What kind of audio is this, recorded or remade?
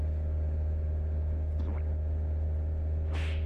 recorded